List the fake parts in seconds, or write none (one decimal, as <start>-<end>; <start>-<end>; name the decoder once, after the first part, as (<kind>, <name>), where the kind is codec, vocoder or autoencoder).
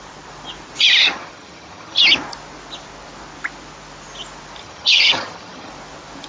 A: 1.0-2.0 (vocoder, HiFi-GAN); 4.6-5.7